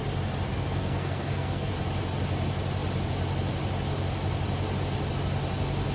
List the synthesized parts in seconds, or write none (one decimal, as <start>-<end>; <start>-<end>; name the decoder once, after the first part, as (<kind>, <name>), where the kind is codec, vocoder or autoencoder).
0.5-1.7 (codec, SNAC)